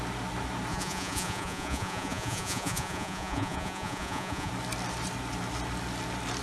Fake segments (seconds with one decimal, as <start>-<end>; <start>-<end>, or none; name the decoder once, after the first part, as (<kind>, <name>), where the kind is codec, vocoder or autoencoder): 0.7-4.5 (vocoder, Vocos)